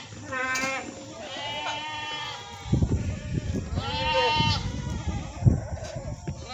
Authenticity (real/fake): real